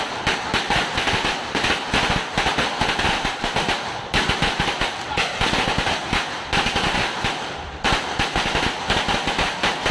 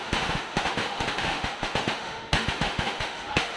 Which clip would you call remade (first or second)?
second